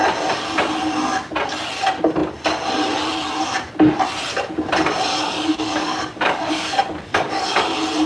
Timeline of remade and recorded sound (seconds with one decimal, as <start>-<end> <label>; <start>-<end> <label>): 0.0-5.1 recorded; 5.1-7.6 remade; 7.6-8.1 recorded